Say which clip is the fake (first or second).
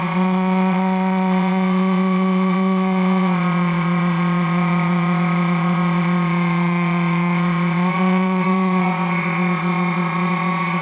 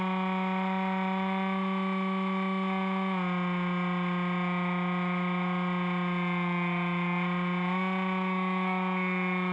first